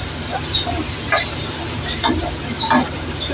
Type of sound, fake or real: real